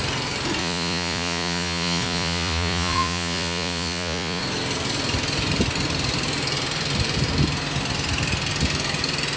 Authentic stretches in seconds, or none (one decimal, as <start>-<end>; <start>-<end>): 0.0-0.6; 4.4-9.4